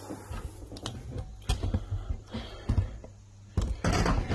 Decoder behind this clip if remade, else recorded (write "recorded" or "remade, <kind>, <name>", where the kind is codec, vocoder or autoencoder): recorded